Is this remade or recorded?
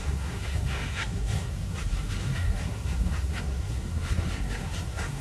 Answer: remade